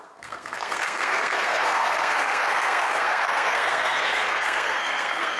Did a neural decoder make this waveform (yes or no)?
yes